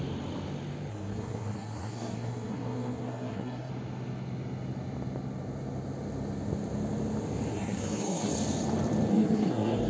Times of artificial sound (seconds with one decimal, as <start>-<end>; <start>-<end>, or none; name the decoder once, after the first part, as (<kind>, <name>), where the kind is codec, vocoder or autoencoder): 0.9-3.7 (codec, SNAC); 7.5-8.3; 9.1-9.9